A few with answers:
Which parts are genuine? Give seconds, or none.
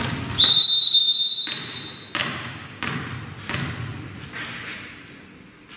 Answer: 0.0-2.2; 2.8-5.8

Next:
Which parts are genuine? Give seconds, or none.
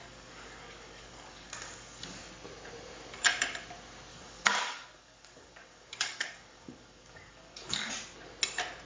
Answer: 2.3-4.1; 7.9-8.8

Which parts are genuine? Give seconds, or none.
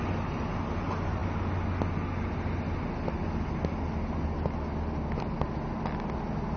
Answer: 0.0-6.6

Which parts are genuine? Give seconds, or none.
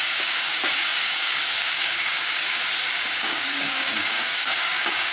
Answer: 2.6-3.2